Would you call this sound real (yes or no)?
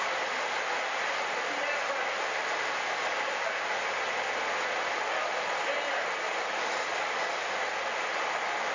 yes